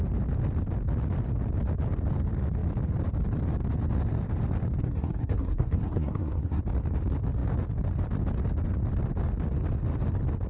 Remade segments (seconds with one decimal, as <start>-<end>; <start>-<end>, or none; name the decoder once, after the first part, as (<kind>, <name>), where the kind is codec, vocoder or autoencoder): 4.8-6.6 (codec, SNAC)